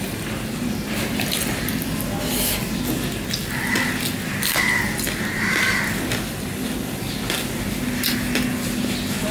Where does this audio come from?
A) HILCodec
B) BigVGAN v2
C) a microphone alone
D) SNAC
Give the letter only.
C